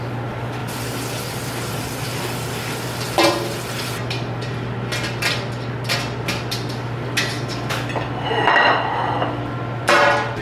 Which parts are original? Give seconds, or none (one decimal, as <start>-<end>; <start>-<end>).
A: 0.0-10.4